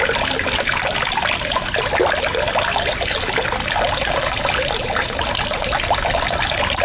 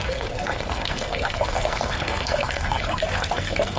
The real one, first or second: first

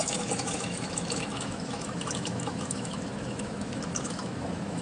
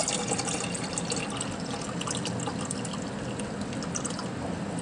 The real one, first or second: second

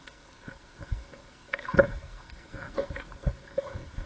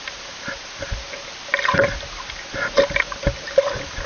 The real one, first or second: second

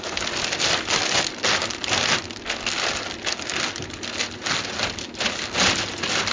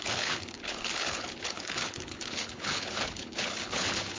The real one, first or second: first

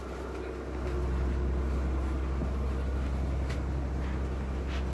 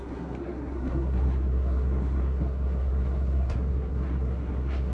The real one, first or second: first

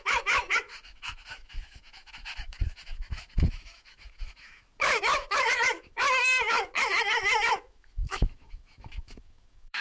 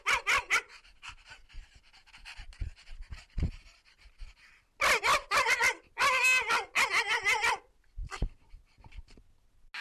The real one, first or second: second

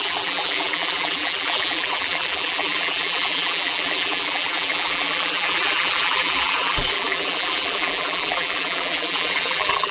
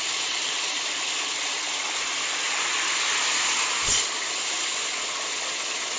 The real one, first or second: second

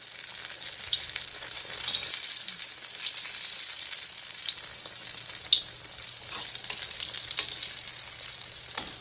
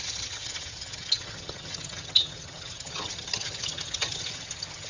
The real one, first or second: first